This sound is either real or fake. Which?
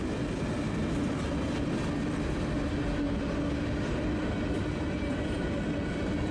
real